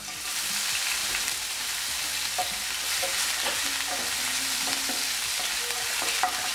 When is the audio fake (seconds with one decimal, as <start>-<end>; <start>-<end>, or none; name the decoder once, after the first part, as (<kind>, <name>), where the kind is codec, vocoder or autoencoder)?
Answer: 1.0-2.1 (vocoder, BigVGAN v2)